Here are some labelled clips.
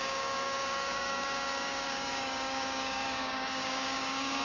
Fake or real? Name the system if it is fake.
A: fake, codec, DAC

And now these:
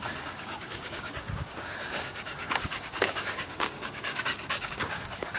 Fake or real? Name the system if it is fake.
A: fake, codec, DAC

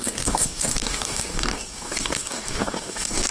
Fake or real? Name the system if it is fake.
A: fake, codec, DAC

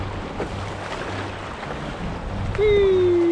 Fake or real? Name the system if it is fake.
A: real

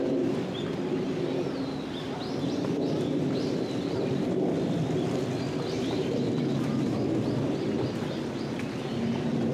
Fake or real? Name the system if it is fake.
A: real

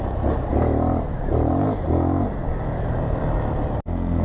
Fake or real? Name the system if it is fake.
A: real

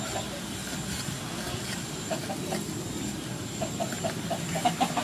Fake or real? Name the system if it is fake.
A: real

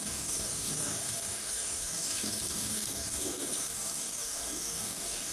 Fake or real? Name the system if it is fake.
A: fake, codec, DAC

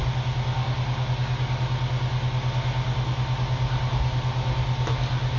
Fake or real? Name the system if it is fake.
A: real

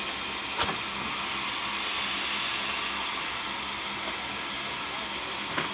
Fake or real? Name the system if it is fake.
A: real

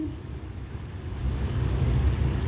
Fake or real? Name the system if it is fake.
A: fake, codec, DAC